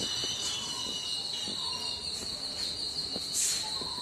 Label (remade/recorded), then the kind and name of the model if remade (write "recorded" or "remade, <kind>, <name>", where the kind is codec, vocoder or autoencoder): recorded